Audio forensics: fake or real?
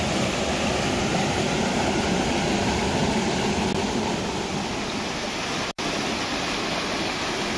real